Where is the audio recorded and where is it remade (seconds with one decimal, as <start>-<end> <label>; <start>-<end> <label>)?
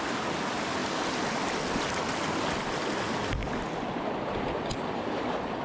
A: 0.0-5.6 recorded